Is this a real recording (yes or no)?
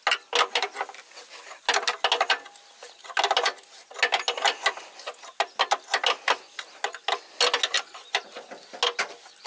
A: yes